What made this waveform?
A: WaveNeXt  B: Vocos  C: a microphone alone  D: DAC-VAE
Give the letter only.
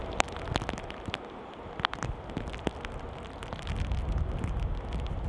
C